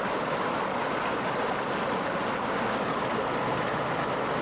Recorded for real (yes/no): yes